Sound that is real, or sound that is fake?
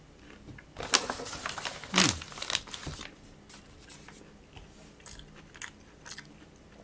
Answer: real